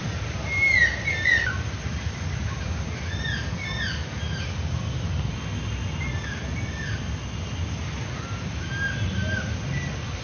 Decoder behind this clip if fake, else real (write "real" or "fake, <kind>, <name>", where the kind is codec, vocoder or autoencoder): real